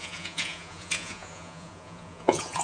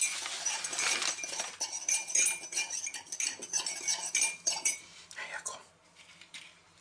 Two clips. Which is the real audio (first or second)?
second